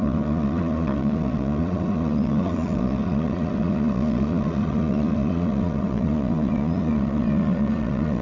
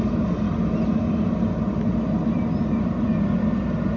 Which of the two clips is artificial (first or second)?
first